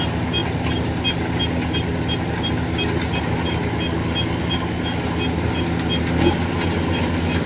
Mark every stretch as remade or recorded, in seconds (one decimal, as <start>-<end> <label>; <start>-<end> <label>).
0.0-7.5 recorded